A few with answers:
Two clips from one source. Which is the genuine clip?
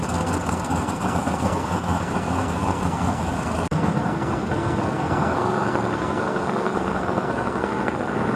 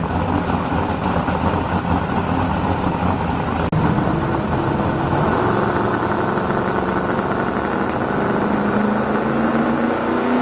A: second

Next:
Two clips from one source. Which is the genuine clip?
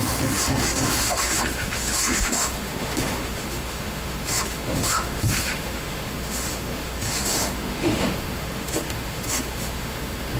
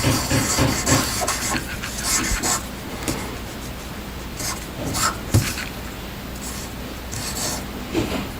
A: second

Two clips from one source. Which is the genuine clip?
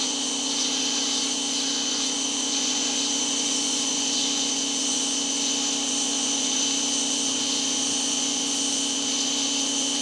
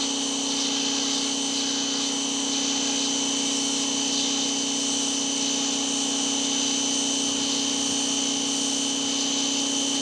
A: second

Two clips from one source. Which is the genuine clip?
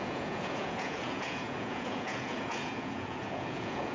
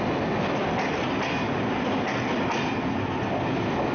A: second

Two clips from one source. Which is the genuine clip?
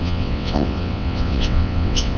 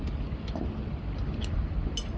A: second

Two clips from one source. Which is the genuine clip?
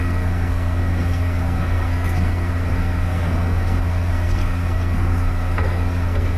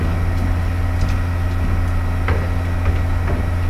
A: second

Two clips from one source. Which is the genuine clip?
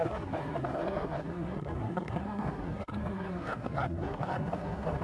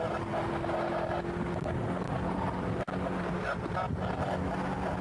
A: second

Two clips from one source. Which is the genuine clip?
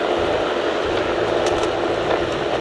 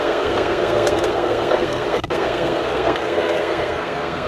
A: first